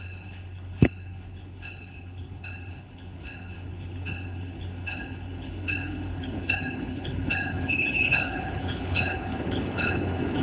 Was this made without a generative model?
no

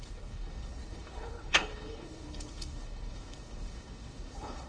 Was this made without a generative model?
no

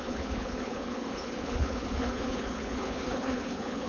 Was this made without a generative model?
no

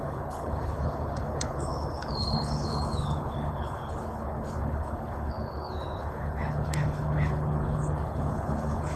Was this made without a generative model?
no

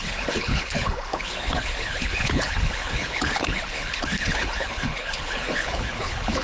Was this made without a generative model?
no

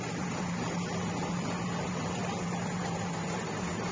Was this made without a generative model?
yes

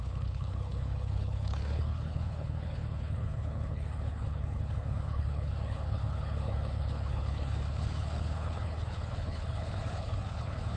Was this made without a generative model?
no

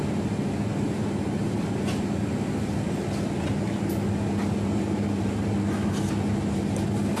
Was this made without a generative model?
yes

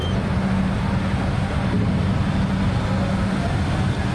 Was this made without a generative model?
yes